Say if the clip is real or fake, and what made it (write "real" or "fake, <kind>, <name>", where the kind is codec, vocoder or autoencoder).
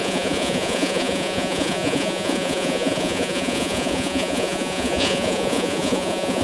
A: fake, vocoder, Vocos